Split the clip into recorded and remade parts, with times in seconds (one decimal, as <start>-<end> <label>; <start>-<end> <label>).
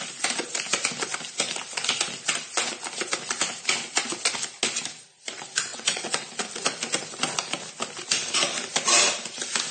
0.0-5.7 recorded; 5.7-6.3 remade; 6.3-9.7 recorded